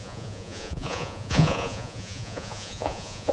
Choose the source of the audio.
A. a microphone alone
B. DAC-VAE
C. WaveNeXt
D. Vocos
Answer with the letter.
D